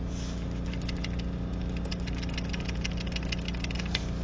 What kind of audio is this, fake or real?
real